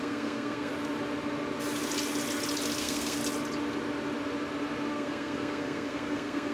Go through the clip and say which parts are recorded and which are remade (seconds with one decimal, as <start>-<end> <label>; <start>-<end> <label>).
0.0-0.7 remade; 0.7-2.8 recorded; 2.8-3.2 remade; 3.2-4.9 recorded; 4.9-6.5 remade